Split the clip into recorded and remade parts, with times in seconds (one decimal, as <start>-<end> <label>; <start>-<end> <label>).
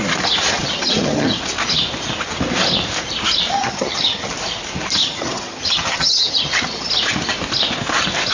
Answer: 0.0-0.5 recorded; 0.5-1.4 remade; 1.4-3.5 recorded; 3.5-4.3 remade; 4.3-5.0 recorded; 5.0-6.9 remade; 6.9-8.3 recorded